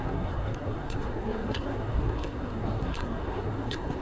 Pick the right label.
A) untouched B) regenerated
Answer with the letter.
B